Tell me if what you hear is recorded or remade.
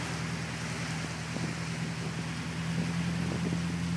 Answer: recorded